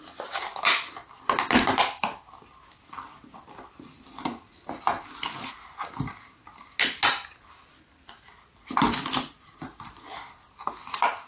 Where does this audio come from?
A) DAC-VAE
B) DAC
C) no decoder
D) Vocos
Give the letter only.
C